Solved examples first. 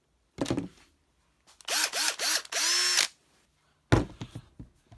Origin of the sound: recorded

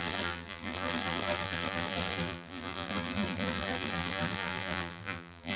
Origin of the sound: remade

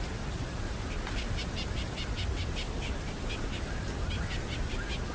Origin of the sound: recorded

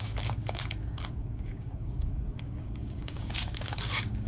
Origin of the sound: remade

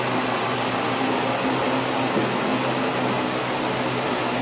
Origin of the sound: recorded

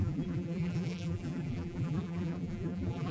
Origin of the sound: remade